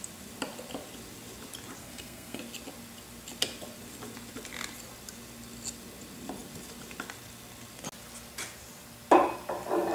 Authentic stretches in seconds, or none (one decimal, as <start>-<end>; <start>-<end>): 0.0-1.8; 2.4-9.9